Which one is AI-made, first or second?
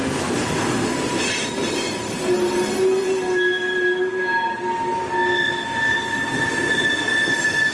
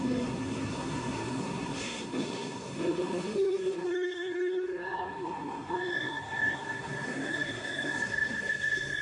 second